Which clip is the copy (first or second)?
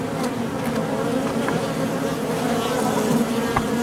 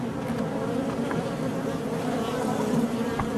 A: second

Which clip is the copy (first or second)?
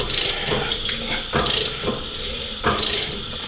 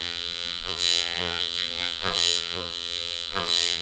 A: second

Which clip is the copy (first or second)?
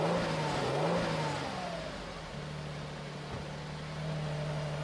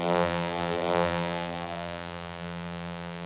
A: second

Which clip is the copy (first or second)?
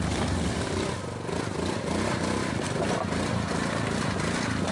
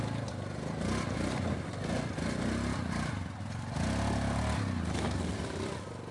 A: first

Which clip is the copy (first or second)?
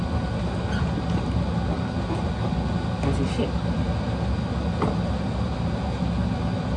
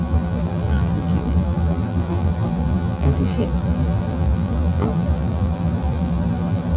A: second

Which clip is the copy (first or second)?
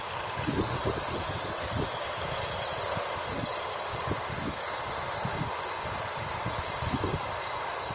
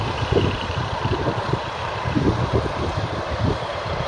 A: second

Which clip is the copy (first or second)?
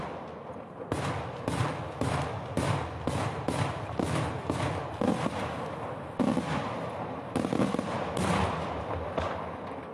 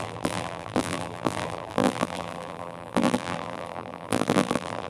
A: second